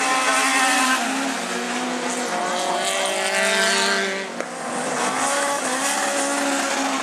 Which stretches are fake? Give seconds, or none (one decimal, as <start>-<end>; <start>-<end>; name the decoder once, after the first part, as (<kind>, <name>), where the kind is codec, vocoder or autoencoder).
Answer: none